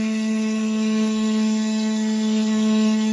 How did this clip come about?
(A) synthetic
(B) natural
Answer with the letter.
A